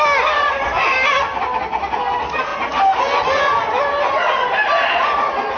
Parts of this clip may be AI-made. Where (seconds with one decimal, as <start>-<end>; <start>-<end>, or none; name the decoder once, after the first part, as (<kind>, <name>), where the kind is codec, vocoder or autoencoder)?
none